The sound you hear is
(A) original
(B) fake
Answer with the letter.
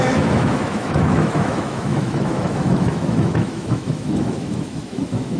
B